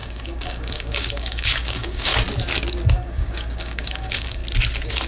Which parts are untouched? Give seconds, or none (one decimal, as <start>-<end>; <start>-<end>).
2.1-2.9; 4.4-5.1